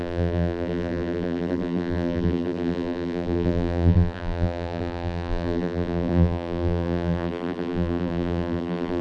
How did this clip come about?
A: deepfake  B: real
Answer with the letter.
A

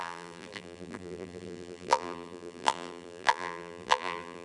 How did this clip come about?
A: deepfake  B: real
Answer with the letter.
A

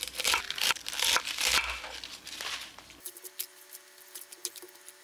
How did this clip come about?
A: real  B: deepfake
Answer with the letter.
A